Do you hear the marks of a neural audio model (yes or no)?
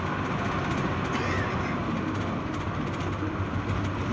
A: no